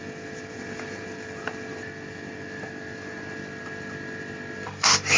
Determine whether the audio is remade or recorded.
remade